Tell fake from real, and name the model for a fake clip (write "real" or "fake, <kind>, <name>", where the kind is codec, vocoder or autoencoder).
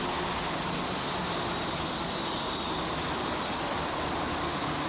real